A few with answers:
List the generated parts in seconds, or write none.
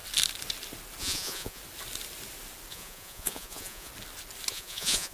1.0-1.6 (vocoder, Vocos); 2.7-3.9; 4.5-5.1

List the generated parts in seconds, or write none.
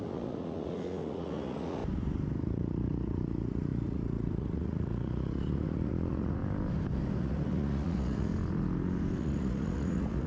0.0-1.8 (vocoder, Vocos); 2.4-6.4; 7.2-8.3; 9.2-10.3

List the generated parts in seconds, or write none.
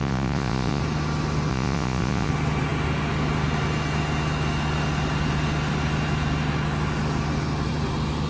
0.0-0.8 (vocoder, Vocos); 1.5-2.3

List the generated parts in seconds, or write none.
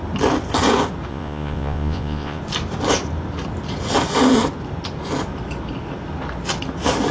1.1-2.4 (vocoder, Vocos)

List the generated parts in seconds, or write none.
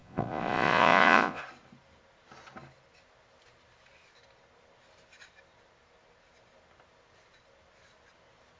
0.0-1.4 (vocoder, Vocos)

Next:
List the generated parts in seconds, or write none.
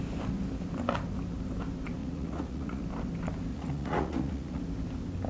2.0-2.8 (vocoder, Vocos); 3.5-4.6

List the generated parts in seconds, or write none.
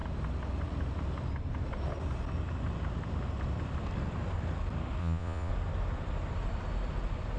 5.0-5.5 (vocoder, Vocos)